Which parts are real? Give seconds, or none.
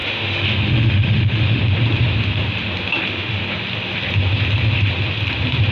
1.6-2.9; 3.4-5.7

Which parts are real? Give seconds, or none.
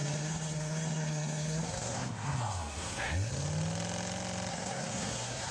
3.3-4.5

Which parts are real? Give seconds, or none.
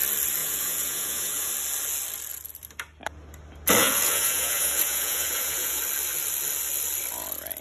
0.0-0.4; 1.5-3.8; 5.8-7.6